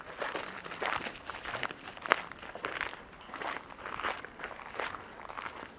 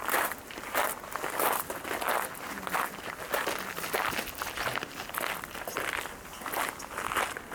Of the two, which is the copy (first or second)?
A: first